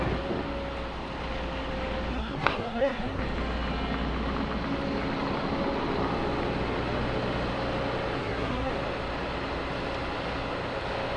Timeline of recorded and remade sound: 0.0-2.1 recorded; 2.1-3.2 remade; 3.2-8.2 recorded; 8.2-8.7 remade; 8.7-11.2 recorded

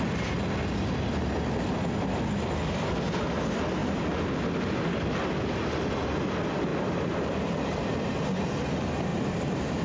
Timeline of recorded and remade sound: 0.0-6.7 recorded; 6.7-8.2 remade; 8.2-9.1 recorded; 9.1-9.8 remade

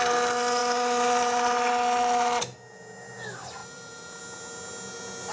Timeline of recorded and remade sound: 0.0-0.6 recorded; 0.6-1.7 remade; 1.7-3.6 recorded; 3.6-4.2 remade; 4.2-5.3 recorded

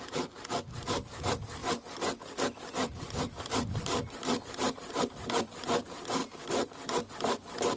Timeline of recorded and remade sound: 0.0-1.6 remade; 1.6-4.4 recorded; 4.4-6.2 remade; 6.2-7.1 recorded; 7.1-7.8 remade

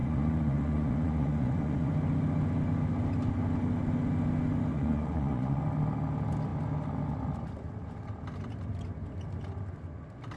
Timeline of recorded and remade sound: 0.0-1.9 remade; 1.9-4.7 recorded; 4.7-5.6 remade; 5.6-10.4 recorded

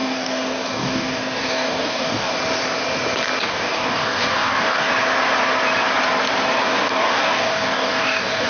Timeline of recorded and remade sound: 0.0-2.3 remade; 2.3-3.4 recorded; 3.4-4.9 remade; 4.9-6.6 recorded; 6.6-8.5 remade